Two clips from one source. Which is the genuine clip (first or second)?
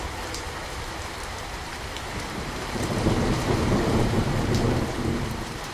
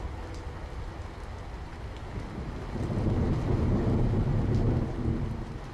second